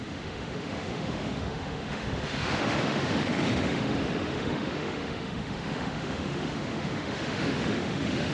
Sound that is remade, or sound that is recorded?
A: remade